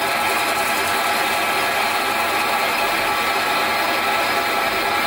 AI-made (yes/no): no